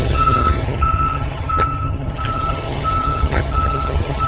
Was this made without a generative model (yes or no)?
no